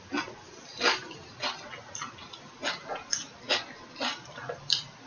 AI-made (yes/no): no